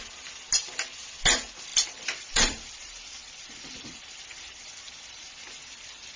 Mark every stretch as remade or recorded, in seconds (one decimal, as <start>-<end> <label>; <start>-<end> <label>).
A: 0.0-1.7 recorded; 1.7-5.4 remade; 5.4-6.2 recorded